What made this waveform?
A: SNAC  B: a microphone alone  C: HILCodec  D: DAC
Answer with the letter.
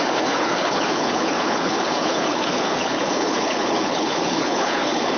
C